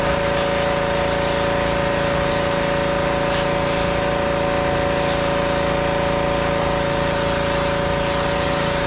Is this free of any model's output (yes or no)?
yes